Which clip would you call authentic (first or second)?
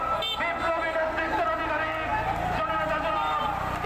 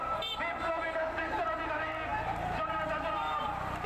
first